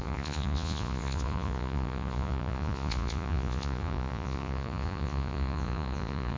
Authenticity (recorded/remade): remade